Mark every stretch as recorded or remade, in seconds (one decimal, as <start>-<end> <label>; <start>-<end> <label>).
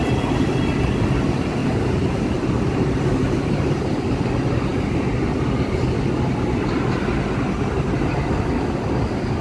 0.0-1.6 recorded; 1.6-4.0 remade; 4.0-9.4 recorded